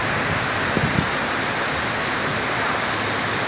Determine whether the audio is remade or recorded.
recorded